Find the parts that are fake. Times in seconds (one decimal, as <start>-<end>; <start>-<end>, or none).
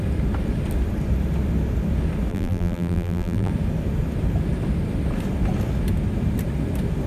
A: 2.3-3.5